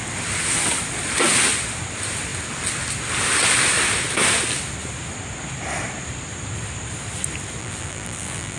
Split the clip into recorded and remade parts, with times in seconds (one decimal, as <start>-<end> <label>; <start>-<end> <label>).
0.0-7.6 recorded; 7.6-8.6 remade